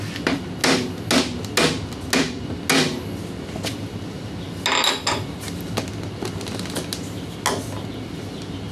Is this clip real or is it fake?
real